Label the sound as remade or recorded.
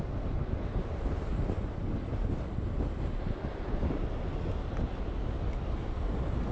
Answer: recorded